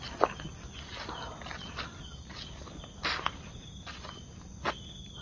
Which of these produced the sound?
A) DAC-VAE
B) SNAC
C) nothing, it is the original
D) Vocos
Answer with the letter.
C